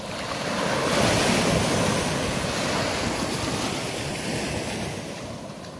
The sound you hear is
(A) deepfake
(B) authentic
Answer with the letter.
B